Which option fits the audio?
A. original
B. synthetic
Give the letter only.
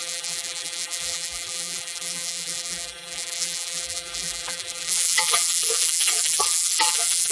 B